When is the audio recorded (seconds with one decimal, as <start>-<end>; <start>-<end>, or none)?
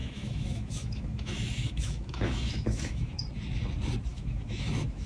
3.1-4.1